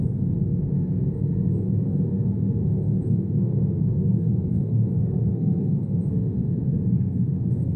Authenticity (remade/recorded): remade